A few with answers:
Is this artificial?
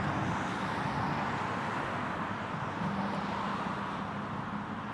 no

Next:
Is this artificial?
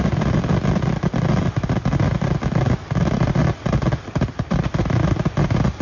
no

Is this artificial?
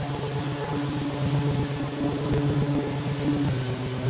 no